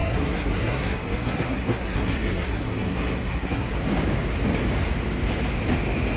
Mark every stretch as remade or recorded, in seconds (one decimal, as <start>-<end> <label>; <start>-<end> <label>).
0.0-3.7 remade; 3.7-6.2 recorded